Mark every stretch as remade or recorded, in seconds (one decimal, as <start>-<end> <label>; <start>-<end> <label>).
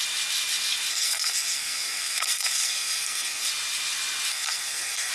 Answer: 0.0-0.9 recorded; 0.9-3.5 remade; 3.5-4.3 recorded; 4.3-5.1 remade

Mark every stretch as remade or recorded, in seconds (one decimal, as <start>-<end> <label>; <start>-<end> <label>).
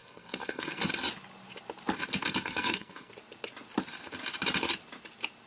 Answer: 0.0-0.8 remade; 0.8-2.2 recorded; 2.2-3.1 remade; 3.1-5.5 recorded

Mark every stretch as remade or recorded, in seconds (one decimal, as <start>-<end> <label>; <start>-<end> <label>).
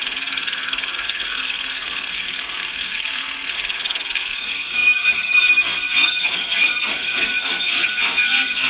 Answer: 0.0-8.7 remade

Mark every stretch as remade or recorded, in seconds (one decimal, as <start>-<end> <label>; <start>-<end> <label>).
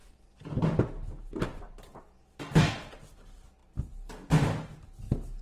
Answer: 0.0-5.4 recorded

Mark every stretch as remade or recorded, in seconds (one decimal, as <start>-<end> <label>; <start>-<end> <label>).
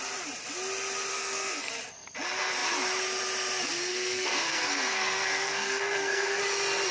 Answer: 0.0-1.1 recorded; 1.1-1.7 remade; 1.7-3.9 recorded; 3.9-6.4 remade; 6.4-6.9 recorded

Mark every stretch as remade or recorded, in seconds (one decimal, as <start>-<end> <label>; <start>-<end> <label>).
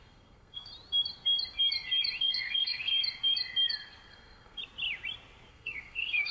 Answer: 0.0-0.7 remade; 0.7-2.2 recorded; 2.2-2.9 remade; 2.9-4.1 recorded; 4.1-4.6 remade; 4.6-5.5 recorded; 5.5-6.3 remade